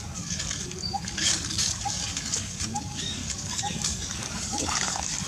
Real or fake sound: fake